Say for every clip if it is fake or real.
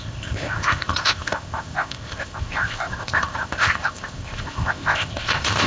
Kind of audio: fake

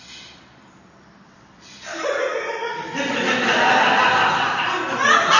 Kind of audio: real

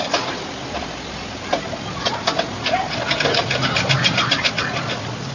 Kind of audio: real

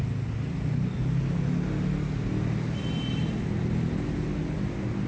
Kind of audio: real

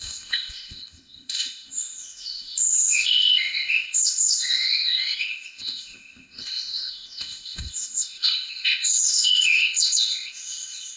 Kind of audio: fake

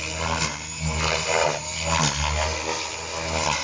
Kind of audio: real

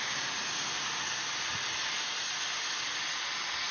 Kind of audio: real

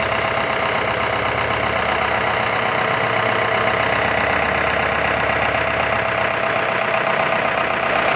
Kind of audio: real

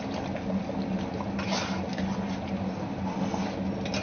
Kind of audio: real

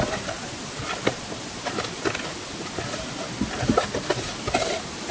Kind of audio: real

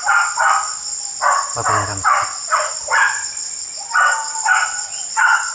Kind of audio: real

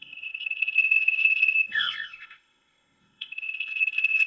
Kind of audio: fake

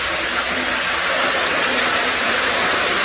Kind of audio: real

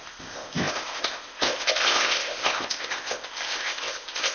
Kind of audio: fake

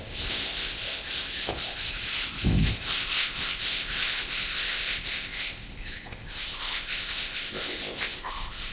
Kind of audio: fake